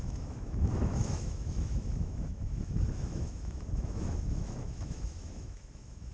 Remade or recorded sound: remade